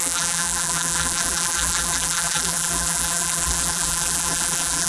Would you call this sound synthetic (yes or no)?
yes